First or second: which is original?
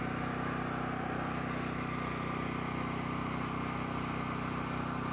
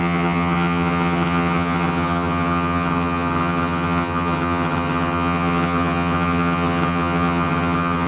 first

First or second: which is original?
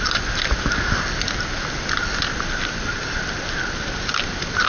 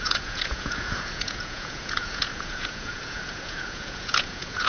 first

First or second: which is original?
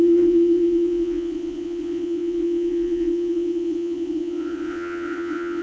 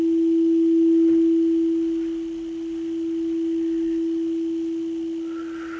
second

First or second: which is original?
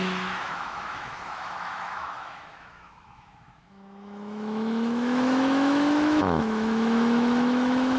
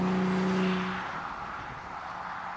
second